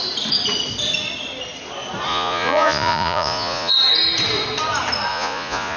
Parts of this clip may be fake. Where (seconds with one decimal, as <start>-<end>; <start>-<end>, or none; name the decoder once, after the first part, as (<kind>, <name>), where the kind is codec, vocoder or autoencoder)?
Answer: 2.1-3.7 (vocoder, Vocos); 5.1-5.8